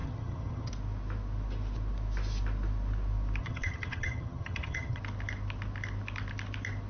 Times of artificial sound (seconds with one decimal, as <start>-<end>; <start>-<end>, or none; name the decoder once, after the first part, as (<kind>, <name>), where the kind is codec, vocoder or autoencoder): 0.0-0.7 (vocoder, HiFi-GAN); 3.4-5.0